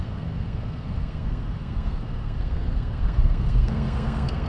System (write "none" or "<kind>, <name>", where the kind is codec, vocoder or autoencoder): codec, SNAC